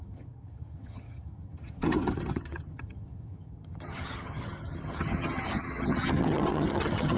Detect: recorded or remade remade